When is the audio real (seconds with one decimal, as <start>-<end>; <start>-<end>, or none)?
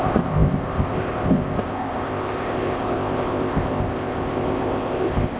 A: none